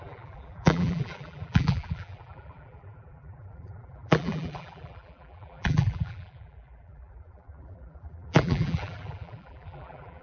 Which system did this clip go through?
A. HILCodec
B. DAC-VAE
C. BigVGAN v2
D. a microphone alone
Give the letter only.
C